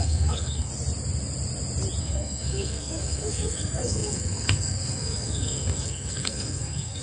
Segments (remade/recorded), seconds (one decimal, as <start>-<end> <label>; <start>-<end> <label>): 0.0-0.7 remade; 0.7-2.0 recorded; 2.0-7.0 remade